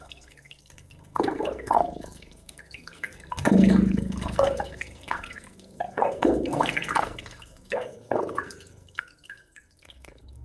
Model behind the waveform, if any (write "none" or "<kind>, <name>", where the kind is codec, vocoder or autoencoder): codec, SNAC